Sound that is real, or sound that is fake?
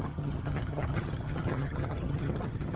fake